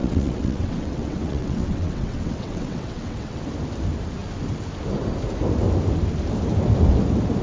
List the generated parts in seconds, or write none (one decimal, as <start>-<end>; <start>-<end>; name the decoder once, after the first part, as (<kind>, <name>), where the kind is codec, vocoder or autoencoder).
0.0-3.4 (vocoder, WaveNeXt)